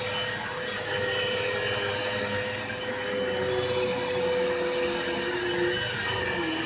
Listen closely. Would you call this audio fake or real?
real